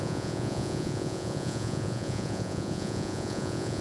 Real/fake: fake